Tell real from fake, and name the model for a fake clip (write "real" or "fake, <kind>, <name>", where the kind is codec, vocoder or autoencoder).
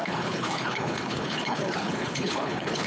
fake, codec, HILCodec